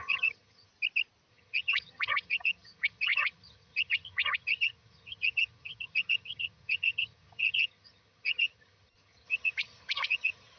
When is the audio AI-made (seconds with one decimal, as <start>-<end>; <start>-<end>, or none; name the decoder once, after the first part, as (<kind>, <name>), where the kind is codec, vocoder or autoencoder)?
0.0-0.7 (vocoder, HiFi-GAN); 1.3-10.6